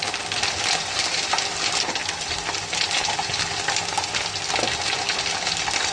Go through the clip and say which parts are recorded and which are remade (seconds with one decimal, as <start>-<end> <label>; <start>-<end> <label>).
0.0-5.9 recorded

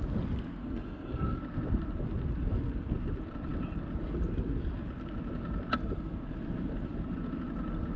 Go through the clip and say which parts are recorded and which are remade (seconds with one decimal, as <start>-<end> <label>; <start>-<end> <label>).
0.0-0.6 recorded; 0.6-1.4 remade; 1.4-8.0 recorded